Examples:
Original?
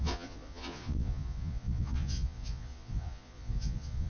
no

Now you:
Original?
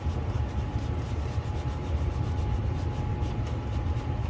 yes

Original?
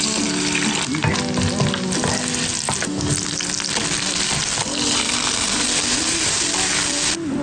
yes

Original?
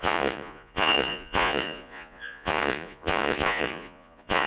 no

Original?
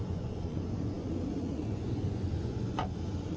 no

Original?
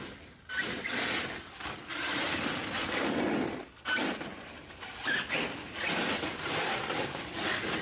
yes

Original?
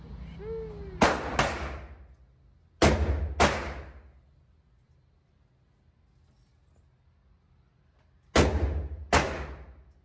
yes